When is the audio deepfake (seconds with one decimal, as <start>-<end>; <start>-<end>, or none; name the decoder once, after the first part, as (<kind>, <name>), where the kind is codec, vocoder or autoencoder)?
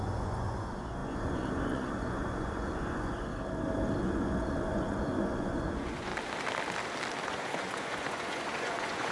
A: 0.0-3.3 (vocoder, Vocos); 4.0-6.1; 7.2-9.1